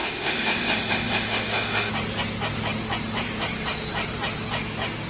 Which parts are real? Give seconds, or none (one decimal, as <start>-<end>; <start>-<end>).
1.9-5.1